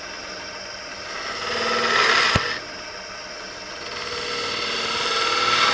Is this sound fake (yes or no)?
no